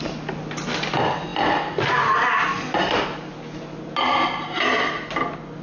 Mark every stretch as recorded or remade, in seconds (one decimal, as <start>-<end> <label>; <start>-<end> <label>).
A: 0.0-5.6 recorded